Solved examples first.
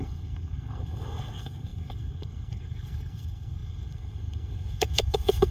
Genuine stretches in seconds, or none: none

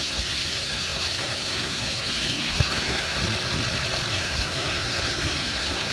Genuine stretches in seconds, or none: 3.2-4.1

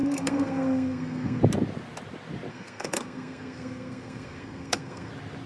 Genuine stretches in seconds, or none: 1.4-2.5; 5.1-5.5

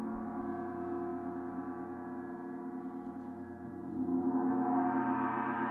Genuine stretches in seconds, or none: 0.0-5.7

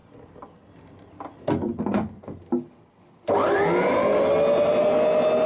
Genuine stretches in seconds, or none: 0.0-5.5

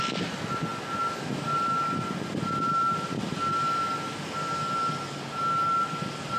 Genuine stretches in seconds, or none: 0.0-6.4

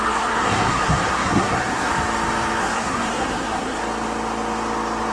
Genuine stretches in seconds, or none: 1.9-2.6; 3.8-5.1